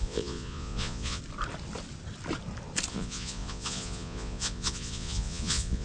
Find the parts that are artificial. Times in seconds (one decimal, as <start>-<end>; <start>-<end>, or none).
0.0-1.2; 2.9-5.8